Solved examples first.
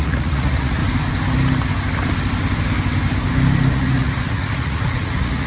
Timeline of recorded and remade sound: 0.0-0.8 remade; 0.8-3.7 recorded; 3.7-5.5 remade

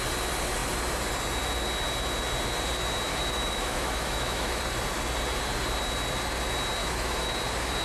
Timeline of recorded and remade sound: 0.0-3.1 recorded; 3.1-4.6 remade; 4.6-6.8 recorded; 6.8-7.3 remade; 7.3-7.8 recorded

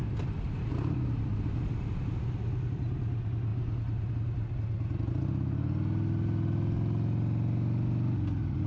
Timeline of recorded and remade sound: 0.0-8.7 recorded

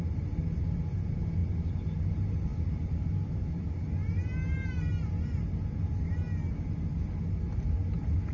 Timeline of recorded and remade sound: 0.0-8.3 recorded

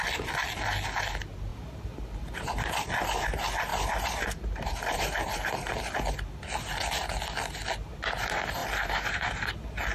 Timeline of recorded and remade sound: 0.0-1.5 recorded; 1.5-2.6 remade; 2.6-3.7 recorded; 3.7-5.7 remade; 5.7-8.6 recorded; 8.6-9.5 remade; 9.5-9.9 recorded

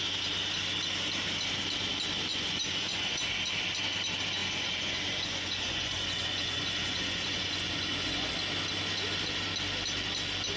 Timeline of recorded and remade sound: 0.0-2.3 recorded; 2.3-3.3 remade; 3.3-4.4 recorded; 4.4-8.3 remade; 8.3-10.6 recorded